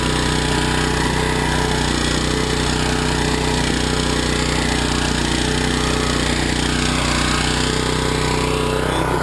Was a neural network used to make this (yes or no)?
no